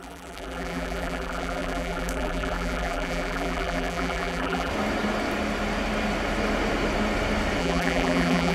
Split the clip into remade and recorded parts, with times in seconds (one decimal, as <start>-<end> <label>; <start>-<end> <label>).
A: 0.0-4.7 remade; 4.7-7.6 recorded; 7.6-8.5 remade